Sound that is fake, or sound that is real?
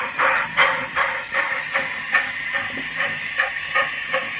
real